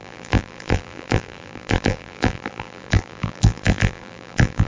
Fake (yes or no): yes